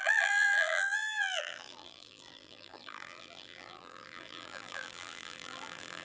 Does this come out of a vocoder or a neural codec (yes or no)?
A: yes